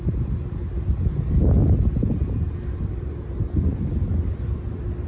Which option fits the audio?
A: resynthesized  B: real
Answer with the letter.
B